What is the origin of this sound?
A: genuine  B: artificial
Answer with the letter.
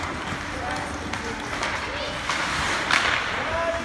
A